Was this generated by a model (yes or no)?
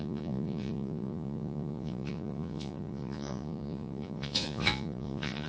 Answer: yes